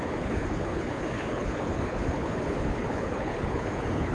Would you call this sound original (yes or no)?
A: no